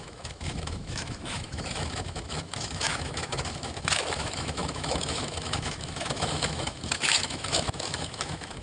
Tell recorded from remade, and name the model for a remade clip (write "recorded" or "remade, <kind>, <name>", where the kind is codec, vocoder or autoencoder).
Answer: remade, autoencoder, DAC-VAE